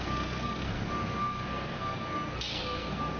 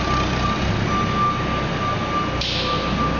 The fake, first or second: first